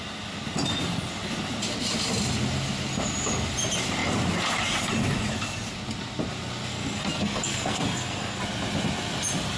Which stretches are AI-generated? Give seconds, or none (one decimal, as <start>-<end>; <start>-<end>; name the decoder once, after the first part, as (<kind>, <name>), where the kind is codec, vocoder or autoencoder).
6.7-8.4 (codec, SNAC)